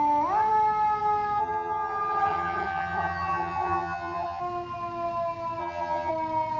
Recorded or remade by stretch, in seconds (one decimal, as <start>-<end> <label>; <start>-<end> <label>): 0.0-1.4 recorded; 1.4-4.4 remade; 4.4-5.6 recorded; 5.6-6.1 remade; 6.1-6.6 recorded